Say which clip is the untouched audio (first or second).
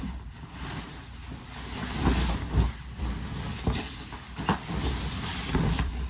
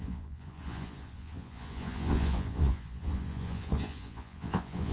first